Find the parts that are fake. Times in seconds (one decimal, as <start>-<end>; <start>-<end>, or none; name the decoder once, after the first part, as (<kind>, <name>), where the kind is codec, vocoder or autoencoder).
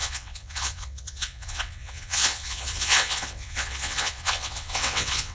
0.0-5.3 (vocoder, WaveNeXt)